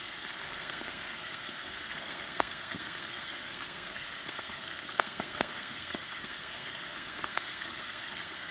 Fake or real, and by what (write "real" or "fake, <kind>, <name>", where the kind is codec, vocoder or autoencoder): fake, codec, SNAC